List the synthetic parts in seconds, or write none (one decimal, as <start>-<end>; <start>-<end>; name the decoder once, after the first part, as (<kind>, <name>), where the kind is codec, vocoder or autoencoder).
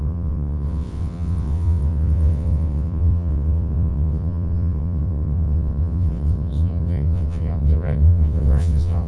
0.0-9.1 (vocoder, WaveNeXt)